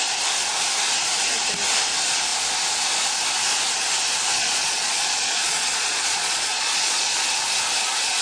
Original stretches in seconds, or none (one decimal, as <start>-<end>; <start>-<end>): 0.0-4.4; 7.1-8.2